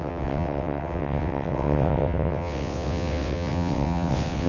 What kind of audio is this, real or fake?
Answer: fake